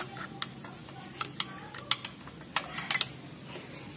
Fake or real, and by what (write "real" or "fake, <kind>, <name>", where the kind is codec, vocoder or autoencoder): real